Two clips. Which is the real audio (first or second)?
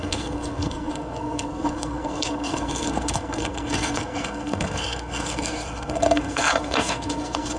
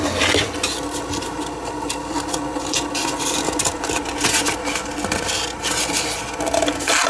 second